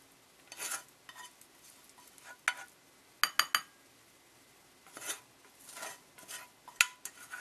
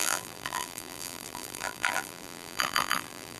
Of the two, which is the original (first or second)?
first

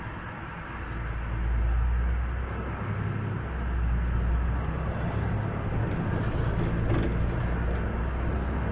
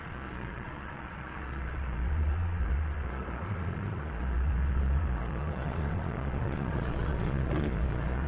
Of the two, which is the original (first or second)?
first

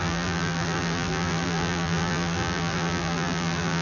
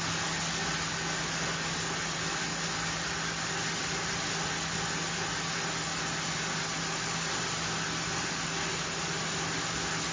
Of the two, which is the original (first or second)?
second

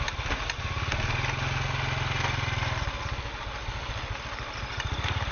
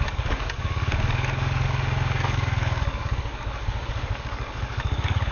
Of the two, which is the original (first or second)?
first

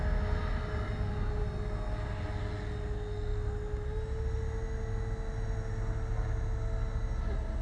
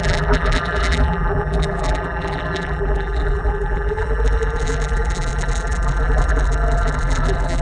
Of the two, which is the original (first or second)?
first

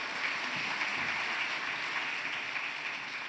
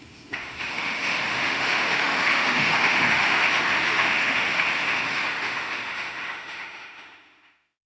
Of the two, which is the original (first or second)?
first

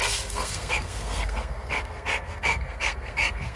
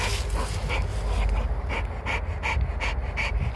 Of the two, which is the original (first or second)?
second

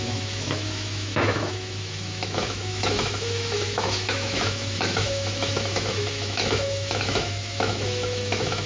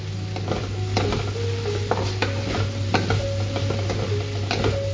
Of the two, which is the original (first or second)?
second